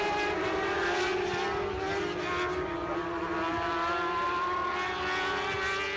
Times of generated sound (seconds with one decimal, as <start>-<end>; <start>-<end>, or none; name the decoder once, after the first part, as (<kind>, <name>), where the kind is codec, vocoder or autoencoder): none